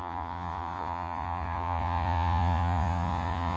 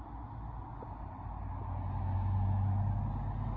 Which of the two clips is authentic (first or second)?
second